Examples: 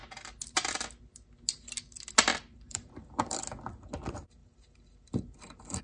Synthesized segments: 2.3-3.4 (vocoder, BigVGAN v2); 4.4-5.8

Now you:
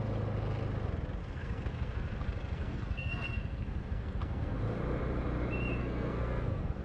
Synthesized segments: 1.2-4.6 (codec, SNAC); 5.8-6.8

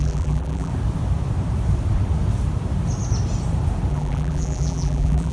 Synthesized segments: 0.0-0.7 (vocoder, BigVGAN v2); 3.9-5.3